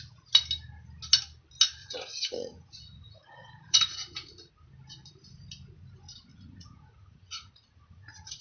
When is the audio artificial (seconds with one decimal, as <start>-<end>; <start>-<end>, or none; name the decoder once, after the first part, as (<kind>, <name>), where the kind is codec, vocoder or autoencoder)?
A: 1.8-4.5 (vocoder, Vocos); 6.3-8.4